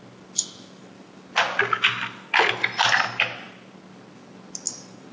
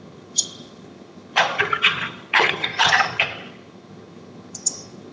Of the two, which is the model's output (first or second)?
second